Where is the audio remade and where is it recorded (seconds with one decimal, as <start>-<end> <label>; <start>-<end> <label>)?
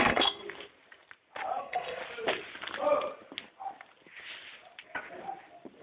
0.0-0.4 remade; 0.4-1.6 recorded; 1.6-2.0 remade; 2.0-5.8 recorded